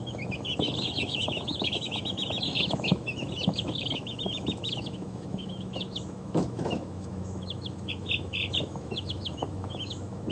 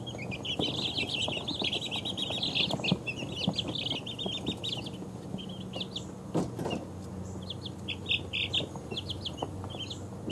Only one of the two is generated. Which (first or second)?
first